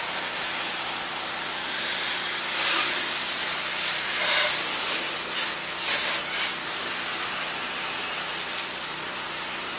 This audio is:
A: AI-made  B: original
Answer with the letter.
B